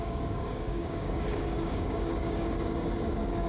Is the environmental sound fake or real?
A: fake